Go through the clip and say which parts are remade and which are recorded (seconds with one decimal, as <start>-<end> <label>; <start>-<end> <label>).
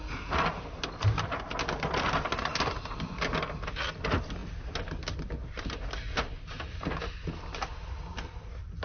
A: 0.0-8.8 recorded